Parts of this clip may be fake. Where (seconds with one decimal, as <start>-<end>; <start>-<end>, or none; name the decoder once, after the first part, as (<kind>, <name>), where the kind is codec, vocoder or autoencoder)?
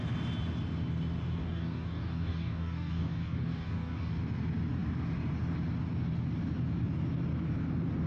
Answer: 1.4-4.1 (codec, DAC)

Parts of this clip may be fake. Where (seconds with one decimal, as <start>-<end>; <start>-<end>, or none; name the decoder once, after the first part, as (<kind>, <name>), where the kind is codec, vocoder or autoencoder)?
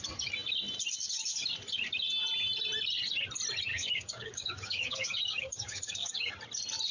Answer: 3.7-6.3 (codec, DAC)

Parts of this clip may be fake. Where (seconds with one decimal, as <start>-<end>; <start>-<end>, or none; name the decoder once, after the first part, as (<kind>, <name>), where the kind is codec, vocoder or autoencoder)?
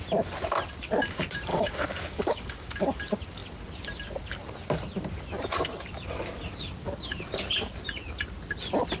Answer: 1.5-2.8 (codec, DAC)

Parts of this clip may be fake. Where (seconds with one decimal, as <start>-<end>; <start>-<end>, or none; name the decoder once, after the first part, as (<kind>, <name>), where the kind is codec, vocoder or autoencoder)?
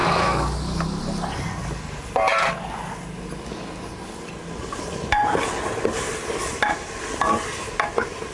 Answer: 0.0-1.0 (codec, DAC)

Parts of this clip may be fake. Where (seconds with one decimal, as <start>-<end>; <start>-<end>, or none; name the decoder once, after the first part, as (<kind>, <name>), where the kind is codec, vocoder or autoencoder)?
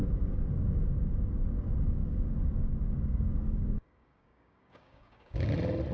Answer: 2.0-5.5 (codec, DAC)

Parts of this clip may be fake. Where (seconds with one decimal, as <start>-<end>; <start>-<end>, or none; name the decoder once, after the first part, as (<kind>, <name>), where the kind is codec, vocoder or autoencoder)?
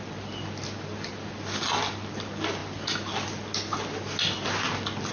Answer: none